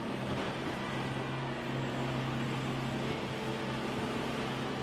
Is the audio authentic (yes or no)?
yes